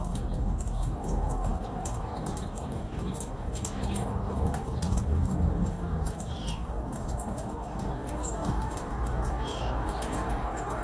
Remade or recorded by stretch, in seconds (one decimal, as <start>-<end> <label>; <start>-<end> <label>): 0.0-10.8 remade